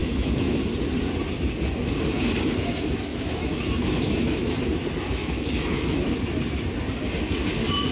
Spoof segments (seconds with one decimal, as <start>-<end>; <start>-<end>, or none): 0.0-0.7; 3.1-4.6; 5.2-6.1